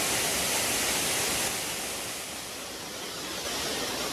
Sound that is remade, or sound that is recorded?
recorded